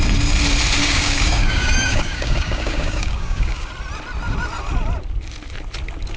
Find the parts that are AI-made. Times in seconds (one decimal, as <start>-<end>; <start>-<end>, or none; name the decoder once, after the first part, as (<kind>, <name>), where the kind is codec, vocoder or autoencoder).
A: 0.8-3.7 (codec, DAC)